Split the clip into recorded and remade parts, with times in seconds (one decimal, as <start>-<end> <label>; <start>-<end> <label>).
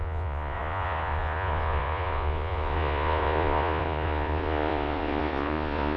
0.0-6.0 remade